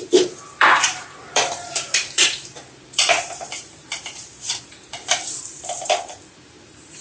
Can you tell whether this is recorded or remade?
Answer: remade